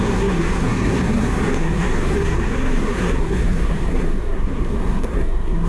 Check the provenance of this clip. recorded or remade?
remade